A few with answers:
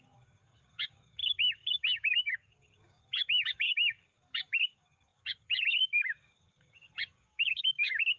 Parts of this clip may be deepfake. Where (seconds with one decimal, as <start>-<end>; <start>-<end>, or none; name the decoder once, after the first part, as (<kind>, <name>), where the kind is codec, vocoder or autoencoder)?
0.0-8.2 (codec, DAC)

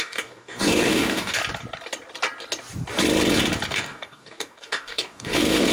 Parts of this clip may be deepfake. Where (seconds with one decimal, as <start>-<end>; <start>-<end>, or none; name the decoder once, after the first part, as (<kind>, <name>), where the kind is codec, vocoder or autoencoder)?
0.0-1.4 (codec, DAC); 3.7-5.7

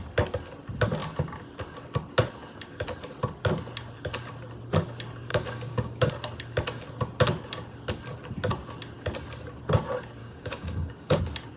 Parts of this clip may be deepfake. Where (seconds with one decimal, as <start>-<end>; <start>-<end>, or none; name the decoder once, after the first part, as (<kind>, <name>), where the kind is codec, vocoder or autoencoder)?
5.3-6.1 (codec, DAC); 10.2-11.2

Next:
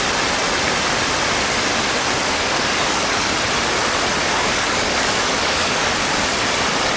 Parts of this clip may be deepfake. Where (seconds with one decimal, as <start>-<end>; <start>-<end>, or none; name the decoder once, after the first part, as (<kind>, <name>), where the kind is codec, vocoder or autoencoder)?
2.2-3.3 (codec, DAC); 4.2-6.3